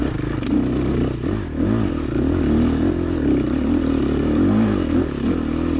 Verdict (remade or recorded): recorded